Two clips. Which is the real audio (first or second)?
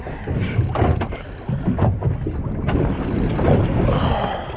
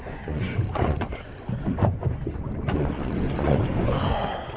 first